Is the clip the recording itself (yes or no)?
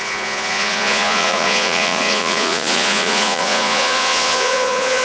no